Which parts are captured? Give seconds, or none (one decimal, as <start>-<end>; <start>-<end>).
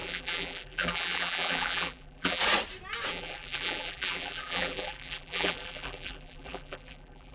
2.4-3.1